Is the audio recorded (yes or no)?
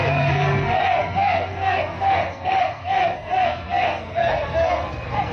no